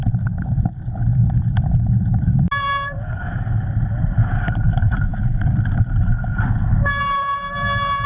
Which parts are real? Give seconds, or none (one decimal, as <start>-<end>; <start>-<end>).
0.0-8.1